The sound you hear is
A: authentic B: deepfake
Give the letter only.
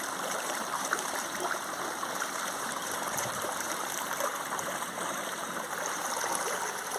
B